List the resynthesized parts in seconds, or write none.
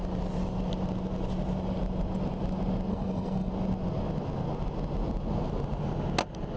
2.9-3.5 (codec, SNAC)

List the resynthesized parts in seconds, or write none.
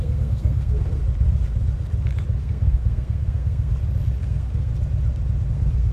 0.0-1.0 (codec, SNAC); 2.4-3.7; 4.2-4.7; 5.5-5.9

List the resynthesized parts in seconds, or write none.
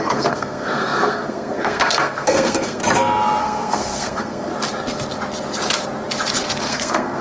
0.0-2.8 (codec, SNAC); 3.4-4.5; 6.6-7.2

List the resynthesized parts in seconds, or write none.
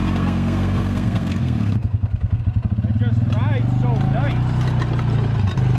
0.0-2.4 (codec, SNAC)